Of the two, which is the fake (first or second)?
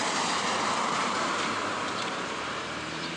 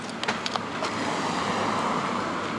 first